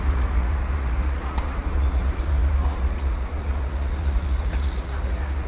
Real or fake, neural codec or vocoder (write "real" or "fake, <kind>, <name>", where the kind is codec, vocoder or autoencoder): fake, vocoder, Vocos